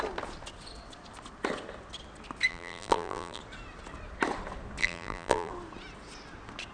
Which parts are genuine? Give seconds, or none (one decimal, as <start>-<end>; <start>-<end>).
0.0-2.5; 3.4-4.8; 5.5-6.7